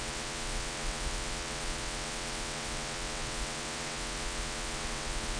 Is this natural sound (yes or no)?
no